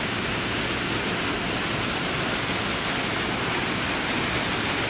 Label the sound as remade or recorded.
recorded